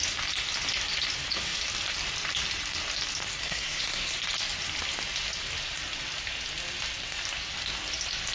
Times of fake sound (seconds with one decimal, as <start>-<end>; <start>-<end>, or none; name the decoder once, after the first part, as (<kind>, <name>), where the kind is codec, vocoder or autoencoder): 3.4-4.1 (codec, SNAC)